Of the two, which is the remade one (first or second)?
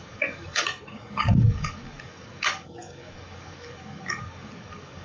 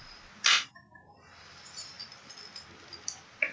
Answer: first